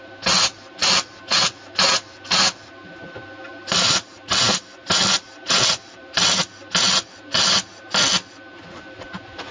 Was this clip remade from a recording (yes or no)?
no